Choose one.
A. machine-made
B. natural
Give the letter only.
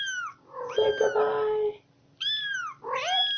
B